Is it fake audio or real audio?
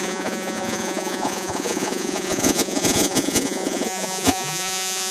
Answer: fake